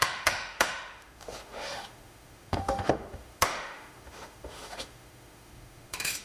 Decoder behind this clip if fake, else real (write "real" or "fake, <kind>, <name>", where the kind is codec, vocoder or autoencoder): fake, autoencoder, DAC-VAE